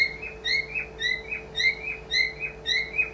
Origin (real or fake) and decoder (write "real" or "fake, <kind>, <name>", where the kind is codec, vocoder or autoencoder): real